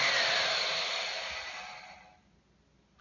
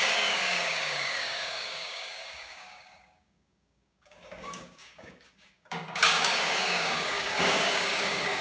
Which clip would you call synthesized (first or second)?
second